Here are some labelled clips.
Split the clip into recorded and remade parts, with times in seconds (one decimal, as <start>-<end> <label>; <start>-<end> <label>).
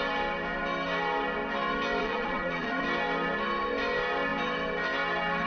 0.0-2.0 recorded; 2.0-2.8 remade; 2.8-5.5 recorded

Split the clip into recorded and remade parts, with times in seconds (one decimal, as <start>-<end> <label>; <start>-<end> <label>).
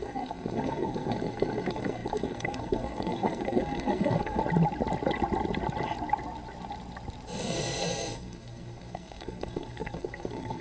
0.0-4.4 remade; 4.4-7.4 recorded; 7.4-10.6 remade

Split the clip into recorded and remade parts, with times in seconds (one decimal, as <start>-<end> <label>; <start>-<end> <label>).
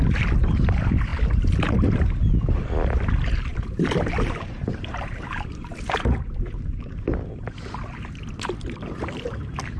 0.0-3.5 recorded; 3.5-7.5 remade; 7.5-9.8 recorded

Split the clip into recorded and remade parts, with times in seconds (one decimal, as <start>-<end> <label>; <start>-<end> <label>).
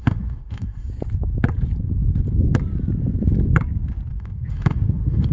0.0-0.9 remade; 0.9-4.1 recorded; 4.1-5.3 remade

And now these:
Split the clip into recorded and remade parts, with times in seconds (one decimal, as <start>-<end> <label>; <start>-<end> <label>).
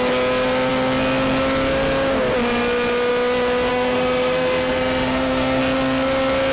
0.0-3.7 recorded; 3.7-5.6 remade; 5.6-6.5 recorded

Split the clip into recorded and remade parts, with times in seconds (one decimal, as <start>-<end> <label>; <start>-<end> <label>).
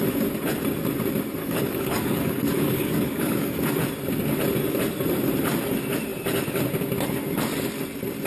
0.0-1.4 recorded; 1.4-3.7 remade; 3.7-8.3 recorded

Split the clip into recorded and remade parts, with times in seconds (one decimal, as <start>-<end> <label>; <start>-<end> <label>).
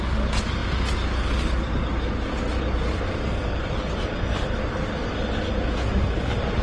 0.0-6.6 recorded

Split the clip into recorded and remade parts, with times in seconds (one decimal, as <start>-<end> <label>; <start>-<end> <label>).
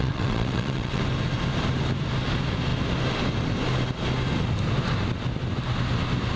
0.0-1.0 remade; 1.0-6.4 recorded